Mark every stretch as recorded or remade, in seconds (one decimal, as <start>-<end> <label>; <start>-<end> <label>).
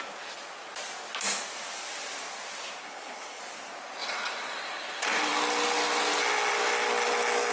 0.0-2.8 recorded; 2.8-3.4 remade; 3.4-7.5 recorded